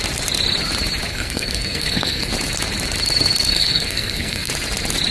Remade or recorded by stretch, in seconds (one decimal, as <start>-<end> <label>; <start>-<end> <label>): 0.0-1.1 recorded; 1.1-2.3 remade; 2.3-3.5 recorded; 3.5-4.5 remade; 4.5-5.1 recorded